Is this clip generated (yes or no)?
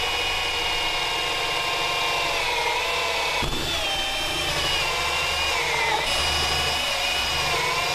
no